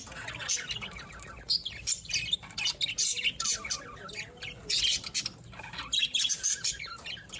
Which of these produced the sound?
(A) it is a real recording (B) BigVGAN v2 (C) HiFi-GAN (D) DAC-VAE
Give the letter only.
A